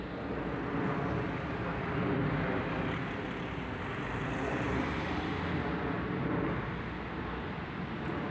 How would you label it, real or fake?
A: real